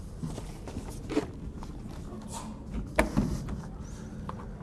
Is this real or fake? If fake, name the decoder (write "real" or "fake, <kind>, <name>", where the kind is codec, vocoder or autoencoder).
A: real